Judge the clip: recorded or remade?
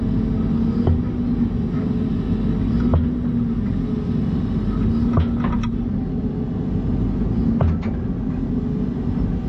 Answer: recorded